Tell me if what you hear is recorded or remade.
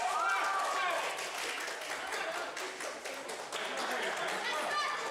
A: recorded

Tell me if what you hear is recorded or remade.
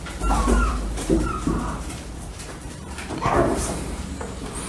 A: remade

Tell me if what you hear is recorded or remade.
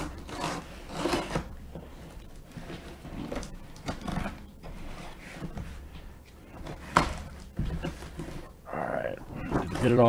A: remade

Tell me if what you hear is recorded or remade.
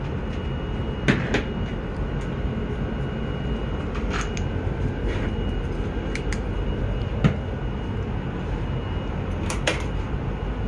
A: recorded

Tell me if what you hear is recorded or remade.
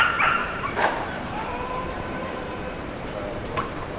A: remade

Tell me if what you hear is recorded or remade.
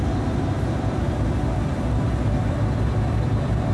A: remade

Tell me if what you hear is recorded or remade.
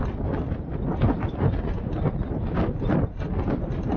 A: recorded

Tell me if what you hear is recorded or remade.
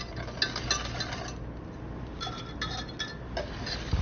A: recorded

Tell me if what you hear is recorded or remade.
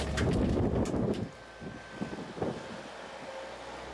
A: recorded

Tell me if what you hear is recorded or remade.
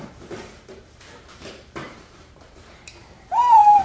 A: remade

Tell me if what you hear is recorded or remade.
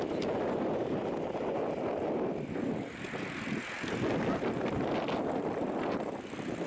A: recorded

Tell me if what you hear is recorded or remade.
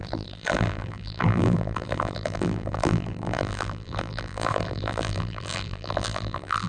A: remade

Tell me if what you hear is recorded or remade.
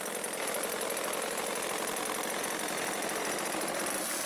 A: remade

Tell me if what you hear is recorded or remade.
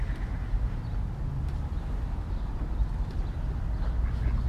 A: recorded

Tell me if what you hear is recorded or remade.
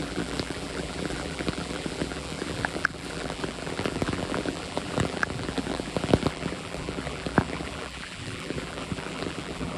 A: remade